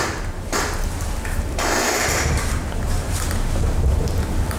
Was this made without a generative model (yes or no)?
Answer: no